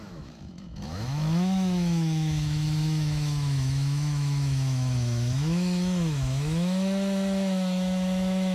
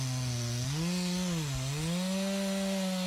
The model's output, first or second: first